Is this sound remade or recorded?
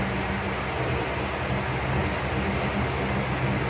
recorded